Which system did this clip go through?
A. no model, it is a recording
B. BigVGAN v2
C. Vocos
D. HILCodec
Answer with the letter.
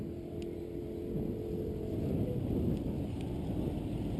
A